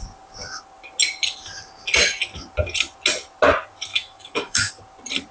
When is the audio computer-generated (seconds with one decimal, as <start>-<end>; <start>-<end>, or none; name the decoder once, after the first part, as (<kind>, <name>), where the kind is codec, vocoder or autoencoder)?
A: 3.9-4.7 (autoencoder, DAC-VAE)